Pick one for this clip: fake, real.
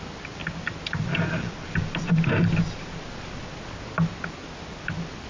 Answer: real